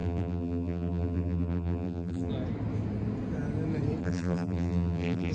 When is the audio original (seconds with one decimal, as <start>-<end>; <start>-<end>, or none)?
2.3-4.0